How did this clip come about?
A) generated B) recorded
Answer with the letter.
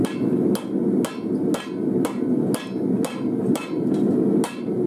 B